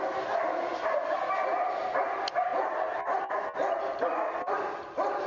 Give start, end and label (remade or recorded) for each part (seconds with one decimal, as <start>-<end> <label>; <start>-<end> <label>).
0.0-5.3 recorded